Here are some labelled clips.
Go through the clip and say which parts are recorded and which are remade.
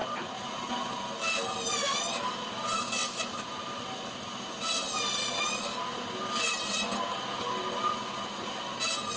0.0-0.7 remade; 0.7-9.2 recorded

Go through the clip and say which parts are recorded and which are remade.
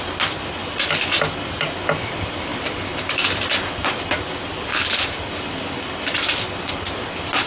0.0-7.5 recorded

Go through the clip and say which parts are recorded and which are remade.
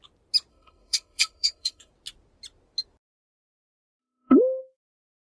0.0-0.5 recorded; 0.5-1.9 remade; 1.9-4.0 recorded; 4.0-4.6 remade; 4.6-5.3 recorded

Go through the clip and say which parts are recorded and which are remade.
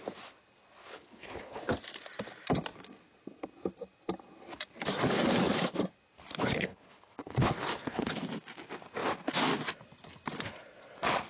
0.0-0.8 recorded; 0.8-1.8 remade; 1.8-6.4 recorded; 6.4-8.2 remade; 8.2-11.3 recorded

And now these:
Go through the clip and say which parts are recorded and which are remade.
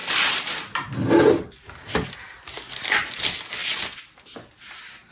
0.0-1.0 remade; 1.0-3.6 recorded; 3.6-4.6 remade; 4.6-5.1 recorded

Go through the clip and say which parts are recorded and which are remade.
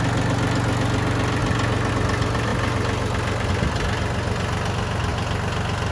0.0-5.9 recorded